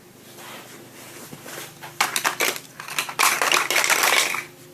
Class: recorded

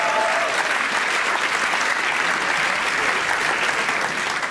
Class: recorded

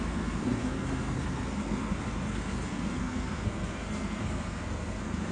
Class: remade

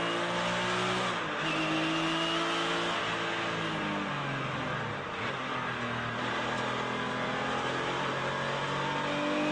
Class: recorded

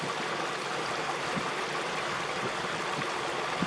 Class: recorded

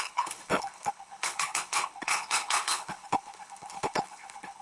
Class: remade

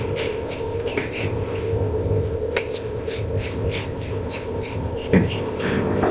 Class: remade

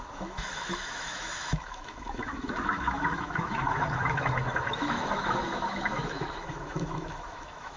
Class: remade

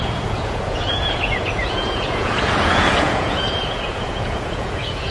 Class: remade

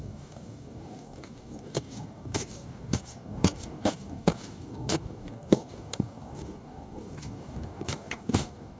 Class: remade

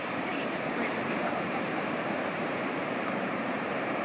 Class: remade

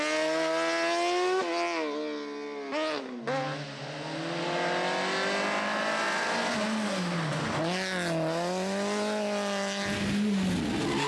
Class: recorded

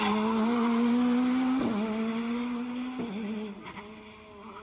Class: recorded